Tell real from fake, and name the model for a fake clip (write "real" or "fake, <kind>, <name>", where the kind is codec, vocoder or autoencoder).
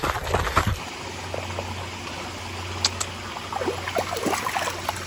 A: real